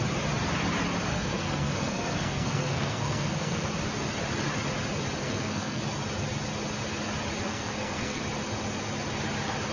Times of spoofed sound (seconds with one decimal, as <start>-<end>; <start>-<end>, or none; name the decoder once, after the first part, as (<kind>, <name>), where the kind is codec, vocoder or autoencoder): 1.1-3.7 (codec, SNAC); 5.2-5.8; 7.5-8.2